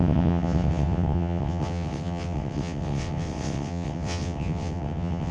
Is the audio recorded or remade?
remade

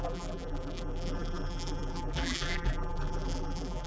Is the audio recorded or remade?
remade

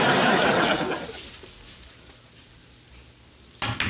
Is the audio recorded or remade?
recorded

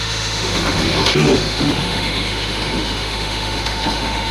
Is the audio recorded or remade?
remade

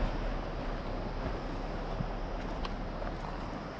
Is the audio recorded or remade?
recorded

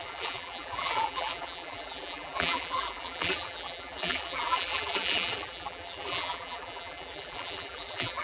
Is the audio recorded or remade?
remade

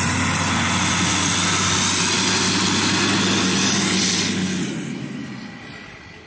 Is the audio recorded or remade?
recorded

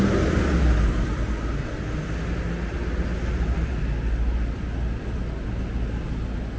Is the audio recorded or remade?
recorded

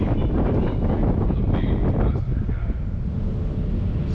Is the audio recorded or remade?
recorded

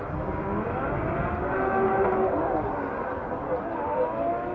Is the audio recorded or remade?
recorded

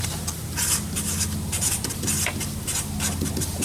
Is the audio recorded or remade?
recorded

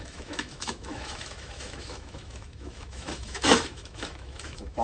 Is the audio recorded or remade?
remade